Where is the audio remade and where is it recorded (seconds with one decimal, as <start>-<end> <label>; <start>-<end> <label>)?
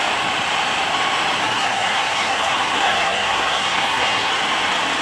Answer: 0.0-1.4 recorded; 1.4-4.3 remade; 4.3-5.0 recorded